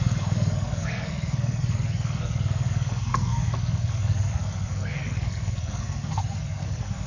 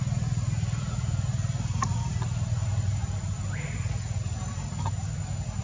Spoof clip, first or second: first